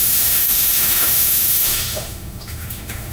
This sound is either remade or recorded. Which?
remade